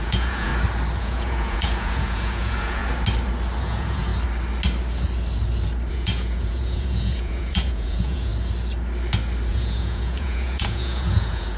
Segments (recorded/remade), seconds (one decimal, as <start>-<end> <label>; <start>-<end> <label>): 0.0-0.5 remade; 0.5-1.0 recorded; 1.0-2.8 remade; 2.8-3.6 recorded; 3.6-4.1 remade; 4.1-5.9 recorded; 5.9-8.3 remade; 8.3-9.5 recorded; 9.5-11.6 remade